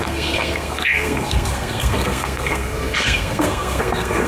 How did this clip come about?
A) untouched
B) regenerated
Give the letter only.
B